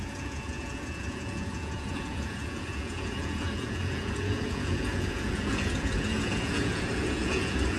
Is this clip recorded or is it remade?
remade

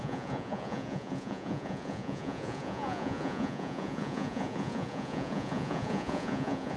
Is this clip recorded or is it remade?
remade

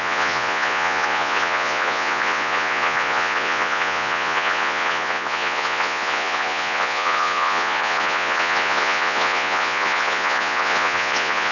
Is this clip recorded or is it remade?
remade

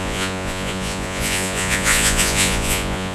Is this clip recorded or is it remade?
remade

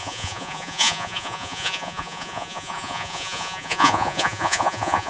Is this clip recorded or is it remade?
remade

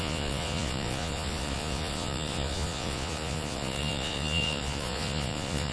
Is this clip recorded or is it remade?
remade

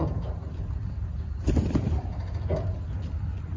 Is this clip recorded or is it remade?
recorded